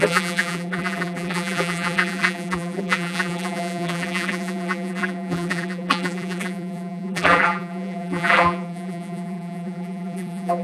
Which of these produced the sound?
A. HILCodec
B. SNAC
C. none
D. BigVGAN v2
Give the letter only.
D